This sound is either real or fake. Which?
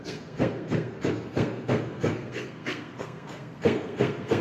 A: fake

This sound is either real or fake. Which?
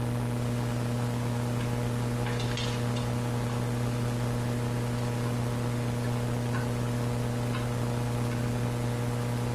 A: real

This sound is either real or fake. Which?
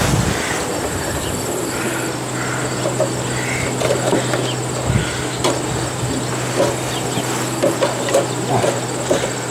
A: real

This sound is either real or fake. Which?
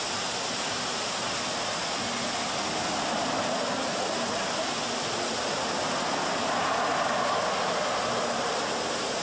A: real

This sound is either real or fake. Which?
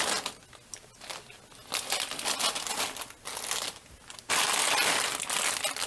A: real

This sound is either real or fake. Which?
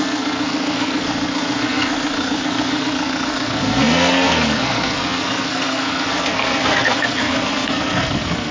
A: fake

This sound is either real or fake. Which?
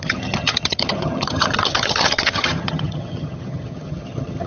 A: fake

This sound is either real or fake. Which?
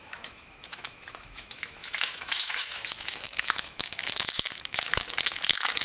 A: fake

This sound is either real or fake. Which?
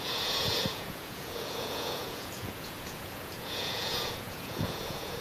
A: fake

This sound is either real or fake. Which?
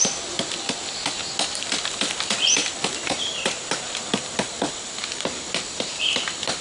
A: real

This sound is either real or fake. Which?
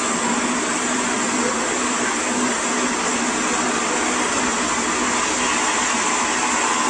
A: real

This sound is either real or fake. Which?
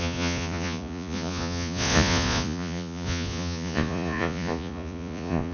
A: fake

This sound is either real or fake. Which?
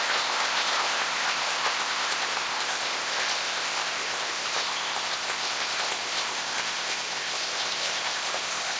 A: fake